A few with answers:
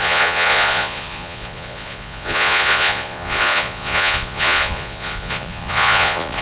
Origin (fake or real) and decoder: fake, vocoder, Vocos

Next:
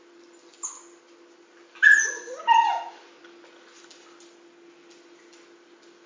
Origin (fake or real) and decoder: real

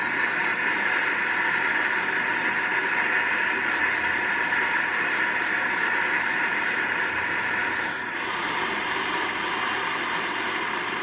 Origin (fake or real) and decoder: real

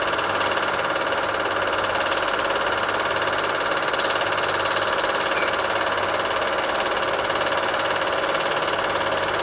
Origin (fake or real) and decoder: real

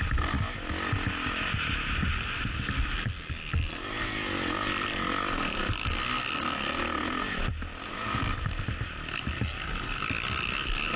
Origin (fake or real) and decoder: real